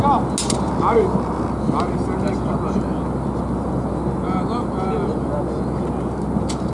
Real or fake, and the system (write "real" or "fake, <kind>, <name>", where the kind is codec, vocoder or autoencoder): real